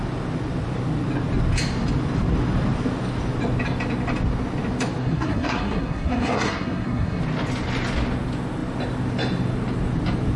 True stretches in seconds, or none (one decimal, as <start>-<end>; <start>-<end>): 0.0-5.0; 7.2-10.4